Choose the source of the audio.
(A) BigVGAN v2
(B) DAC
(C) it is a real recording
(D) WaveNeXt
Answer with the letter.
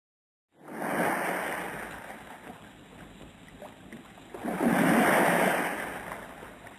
C